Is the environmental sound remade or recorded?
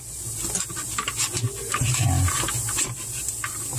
recorded